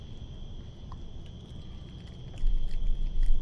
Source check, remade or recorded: recorded